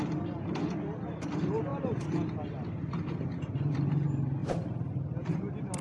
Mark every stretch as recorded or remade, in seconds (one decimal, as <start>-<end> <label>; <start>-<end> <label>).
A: 0.0-5.8 recorded